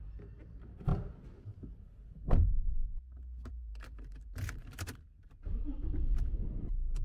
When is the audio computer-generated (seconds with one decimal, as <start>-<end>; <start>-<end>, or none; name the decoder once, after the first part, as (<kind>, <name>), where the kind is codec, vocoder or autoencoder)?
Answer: 0.0-0.9 (vocoder, BigVGAN v2); 3.5-7.0

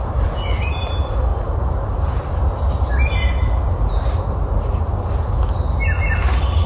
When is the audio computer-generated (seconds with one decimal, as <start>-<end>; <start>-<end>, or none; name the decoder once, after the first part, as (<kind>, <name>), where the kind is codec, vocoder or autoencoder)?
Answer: none

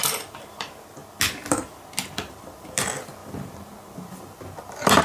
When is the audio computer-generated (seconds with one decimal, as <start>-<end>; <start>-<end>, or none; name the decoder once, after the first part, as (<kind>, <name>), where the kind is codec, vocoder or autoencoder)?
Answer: none

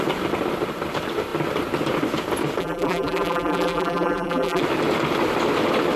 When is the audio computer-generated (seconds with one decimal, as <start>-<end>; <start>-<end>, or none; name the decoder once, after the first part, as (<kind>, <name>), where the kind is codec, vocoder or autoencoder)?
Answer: 2.6-4.6 (vocoder, BigVGAN v2)

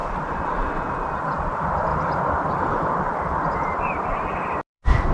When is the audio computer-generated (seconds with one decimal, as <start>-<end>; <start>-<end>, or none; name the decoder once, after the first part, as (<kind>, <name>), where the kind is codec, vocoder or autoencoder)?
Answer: 0.0-0.9 (vocoder, BigVGAN v2); 1.9-5.1